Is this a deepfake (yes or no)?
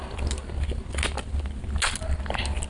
no